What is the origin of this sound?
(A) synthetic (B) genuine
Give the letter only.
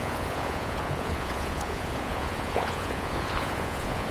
A